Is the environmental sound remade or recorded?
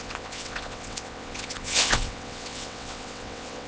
remade